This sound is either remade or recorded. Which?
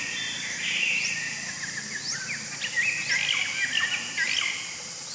recorded